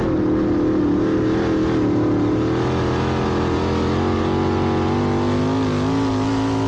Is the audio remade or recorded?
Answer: recorded